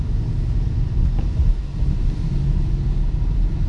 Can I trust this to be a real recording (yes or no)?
yes